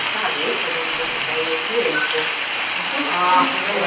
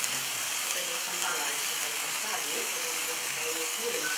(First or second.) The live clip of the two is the first